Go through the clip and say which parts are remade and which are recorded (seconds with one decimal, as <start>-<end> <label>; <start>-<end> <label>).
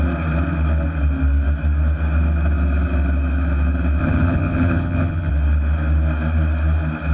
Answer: 0.0-4.0 recorded; 4.0-5.3 remade; 5.3-7.1 recorded